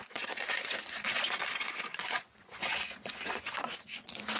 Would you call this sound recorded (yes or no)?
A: no